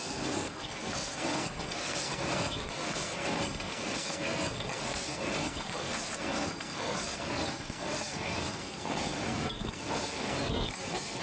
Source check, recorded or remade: remade